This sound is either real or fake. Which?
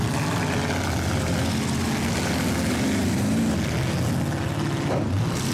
real